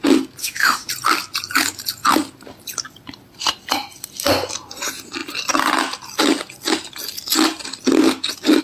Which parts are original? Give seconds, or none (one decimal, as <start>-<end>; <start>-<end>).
0.0-0.4; 0.9-8.6